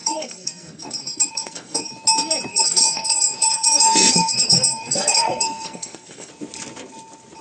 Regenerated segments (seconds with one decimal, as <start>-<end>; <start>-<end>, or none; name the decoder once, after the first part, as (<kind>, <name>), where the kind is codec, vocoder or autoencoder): 0.0-1.9 (codec, SNAC); 2.5-6.3